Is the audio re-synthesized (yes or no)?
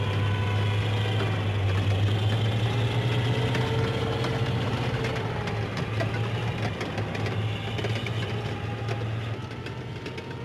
no